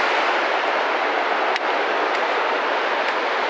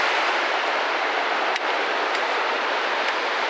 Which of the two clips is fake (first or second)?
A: second